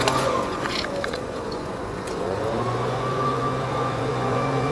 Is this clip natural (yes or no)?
no